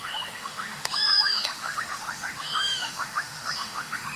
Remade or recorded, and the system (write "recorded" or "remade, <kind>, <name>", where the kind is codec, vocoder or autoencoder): remade, autoencoder, DAC-VAE